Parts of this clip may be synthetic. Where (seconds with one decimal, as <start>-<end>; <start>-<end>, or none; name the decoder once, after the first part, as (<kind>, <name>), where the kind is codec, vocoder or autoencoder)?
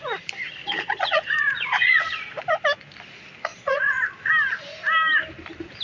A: 0.6-2.4 (vocoder, Vocos); 3.5-4.3